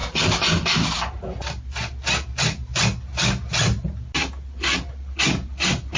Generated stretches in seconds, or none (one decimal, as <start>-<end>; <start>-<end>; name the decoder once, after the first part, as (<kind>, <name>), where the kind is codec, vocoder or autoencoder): none